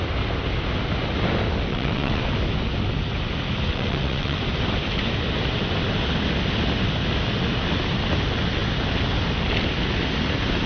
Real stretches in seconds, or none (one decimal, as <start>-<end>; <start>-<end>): 0.0-1.7; 2.2-3.7; 4.4-10.7